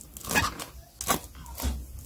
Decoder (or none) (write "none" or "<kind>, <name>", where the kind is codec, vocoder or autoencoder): none